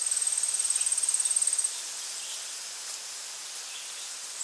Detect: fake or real real